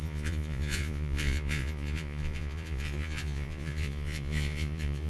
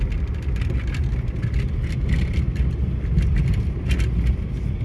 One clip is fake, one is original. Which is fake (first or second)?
first